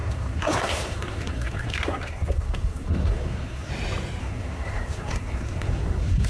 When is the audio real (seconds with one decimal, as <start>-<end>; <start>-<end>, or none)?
3.7-4.2